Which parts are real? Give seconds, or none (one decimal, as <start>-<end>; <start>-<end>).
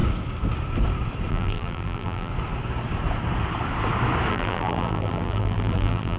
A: 0.0-1.3; 2.3-4.3